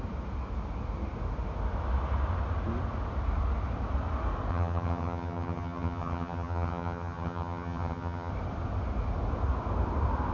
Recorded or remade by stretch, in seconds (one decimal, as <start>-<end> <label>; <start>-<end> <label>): 0.0-4.5 recorded; 4.5-8.3 remade; 8.3-10.3 recorded